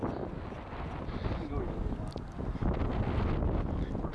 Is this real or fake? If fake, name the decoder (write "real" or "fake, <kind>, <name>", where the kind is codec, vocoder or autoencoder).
real